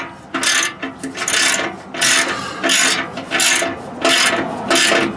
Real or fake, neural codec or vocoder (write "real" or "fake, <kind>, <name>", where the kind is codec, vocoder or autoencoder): real